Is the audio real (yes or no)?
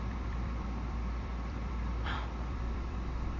no